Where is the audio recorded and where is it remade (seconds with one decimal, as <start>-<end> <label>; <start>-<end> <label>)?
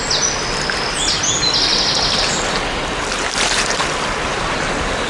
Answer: 0.0-5.1 recorded